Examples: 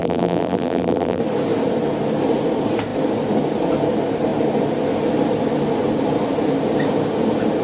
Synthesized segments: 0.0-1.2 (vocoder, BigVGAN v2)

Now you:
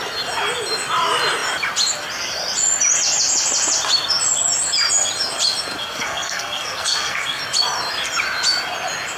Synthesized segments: 5.8-7.4 (codec, SNAC)

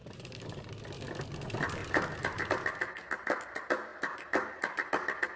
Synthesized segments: 0.0-0.7 (vocoder, BigVGAN v2); 1.8-2.5